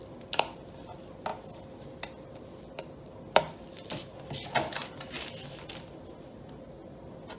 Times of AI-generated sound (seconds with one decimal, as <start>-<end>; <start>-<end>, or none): none